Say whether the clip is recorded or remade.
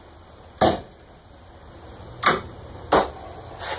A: recorded